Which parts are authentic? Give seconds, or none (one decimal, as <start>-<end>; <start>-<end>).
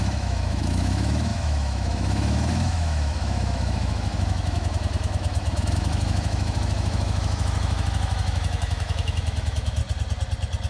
9.8-10.7